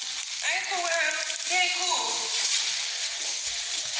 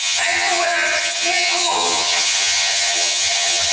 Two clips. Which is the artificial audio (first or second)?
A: second